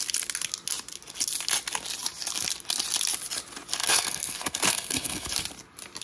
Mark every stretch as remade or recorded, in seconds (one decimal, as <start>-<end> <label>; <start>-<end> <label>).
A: 0.0-3.8 recorded; 3.8-5.3 remade; 5.3-6.0 recorded